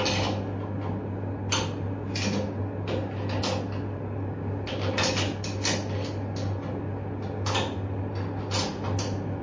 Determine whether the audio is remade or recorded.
recorded